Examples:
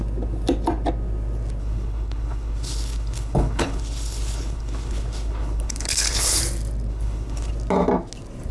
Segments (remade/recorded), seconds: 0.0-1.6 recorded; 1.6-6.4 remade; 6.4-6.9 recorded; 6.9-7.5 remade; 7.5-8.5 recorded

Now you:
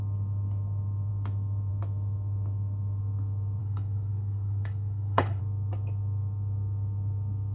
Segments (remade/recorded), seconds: 0.0-3.6 recorded; 3.6-5.4 remade; 5.4-7.5 recorded

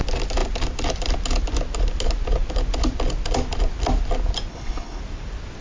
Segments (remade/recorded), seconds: 0.0-4.5 recorded; 4.5-5.0 remade; 5.0-5.6 recorded

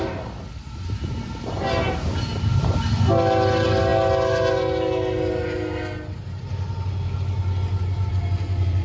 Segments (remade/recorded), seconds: 0.0-8.8 recorded